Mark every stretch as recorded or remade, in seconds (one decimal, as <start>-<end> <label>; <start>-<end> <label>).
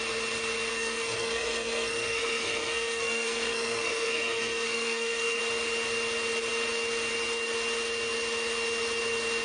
0.0-0.7 recorded; 0.7-5.4 remade; 5.4-9.4 recorded